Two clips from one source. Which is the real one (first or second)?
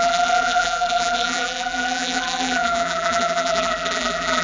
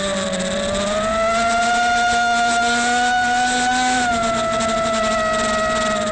second